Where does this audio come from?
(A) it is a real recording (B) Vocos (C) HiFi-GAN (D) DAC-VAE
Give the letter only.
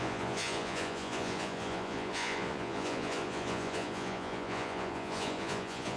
B